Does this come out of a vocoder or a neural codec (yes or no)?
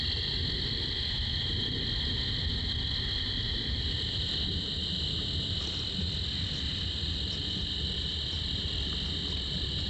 no